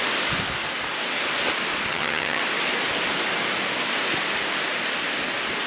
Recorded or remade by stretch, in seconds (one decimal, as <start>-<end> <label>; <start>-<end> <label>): 0.0-1.9 recorded; 1.9-2.4 remade; 2.4-5.7 recorded